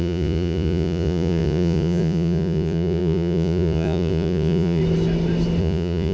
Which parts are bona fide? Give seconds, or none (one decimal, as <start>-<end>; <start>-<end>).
4.8-5.6

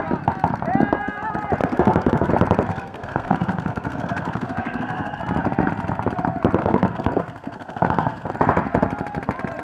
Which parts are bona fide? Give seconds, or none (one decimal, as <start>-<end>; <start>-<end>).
0.0-1.6; 2.3-2.7; 5.2-6.6; 8.3-9.6